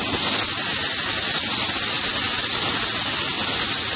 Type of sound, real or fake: real